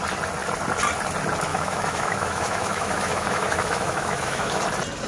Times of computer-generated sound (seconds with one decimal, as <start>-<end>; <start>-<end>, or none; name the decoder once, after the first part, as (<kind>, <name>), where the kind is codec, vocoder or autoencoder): 1.5-4.6 (autoencoder, DAC-VAE)